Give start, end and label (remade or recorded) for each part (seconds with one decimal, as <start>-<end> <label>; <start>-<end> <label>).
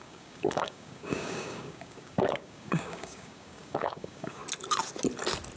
0.0-4.4 remade; 4.4-5.6 recorded